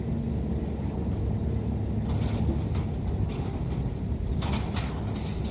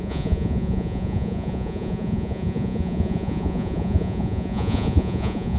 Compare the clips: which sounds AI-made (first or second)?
second